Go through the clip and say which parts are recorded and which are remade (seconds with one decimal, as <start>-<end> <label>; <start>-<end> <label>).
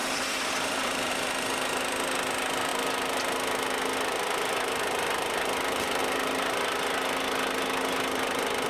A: 0.0-1.1 remade; 1.1-8.7 recorded